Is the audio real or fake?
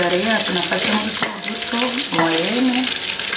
real